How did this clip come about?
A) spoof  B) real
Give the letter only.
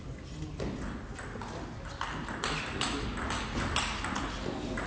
B